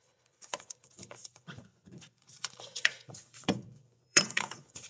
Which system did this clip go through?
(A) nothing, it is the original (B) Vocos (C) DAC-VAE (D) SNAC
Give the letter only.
B